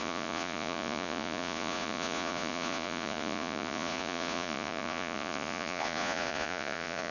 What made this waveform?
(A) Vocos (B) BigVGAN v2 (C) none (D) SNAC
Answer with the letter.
A